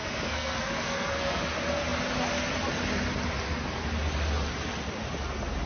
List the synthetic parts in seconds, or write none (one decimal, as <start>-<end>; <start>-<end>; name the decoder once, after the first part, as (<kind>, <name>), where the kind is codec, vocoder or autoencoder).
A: 0.0-1.4 (codec, SNAC)